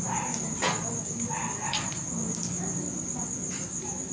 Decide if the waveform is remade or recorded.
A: recorded